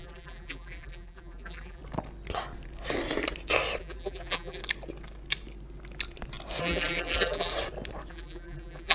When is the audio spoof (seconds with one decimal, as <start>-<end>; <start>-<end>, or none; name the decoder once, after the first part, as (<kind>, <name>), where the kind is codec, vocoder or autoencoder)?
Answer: 0.0-1.8 (vocoder, BigVGAN v2); 3.8-4.6; 6.6-7.5; 8.1-8.9